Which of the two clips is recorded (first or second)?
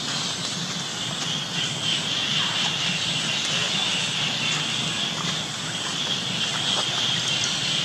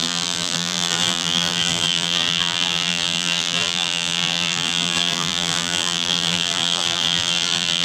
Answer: first